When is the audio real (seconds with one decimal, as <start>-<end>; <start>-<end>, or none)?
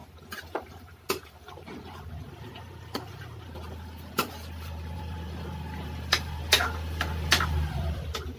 0.0-8.4